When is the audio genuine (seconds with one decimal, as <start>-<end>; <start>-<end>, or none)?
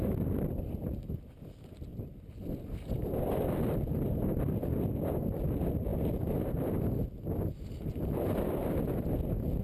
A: 0.0-9.6